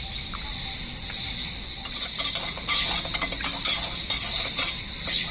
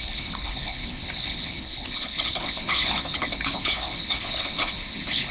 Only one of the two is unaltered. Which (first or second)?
first